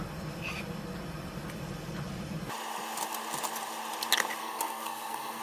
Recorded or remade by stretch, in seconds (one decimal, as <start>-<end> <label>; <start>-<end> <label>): 0.0-4.4 recorded; 4.4-5.4 remade